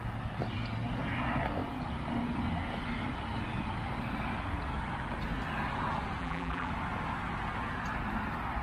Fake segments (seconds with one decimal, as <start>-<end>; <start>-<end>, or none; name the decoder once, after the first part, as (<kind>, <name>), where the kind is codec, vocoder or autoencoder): 6.2-6.7 (vocoder, BigVGAN v2)